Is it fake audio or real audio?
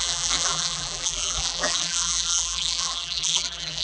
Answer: fake